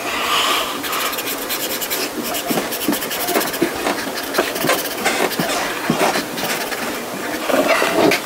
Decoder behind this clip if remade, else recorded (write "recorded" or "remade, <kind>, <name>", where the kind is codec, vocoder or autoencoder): recorded